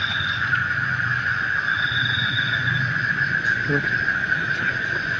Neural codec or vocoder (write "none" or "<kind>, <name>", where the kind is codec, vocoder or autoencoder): vocoder, Vocos